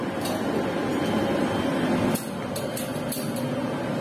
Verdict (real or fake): real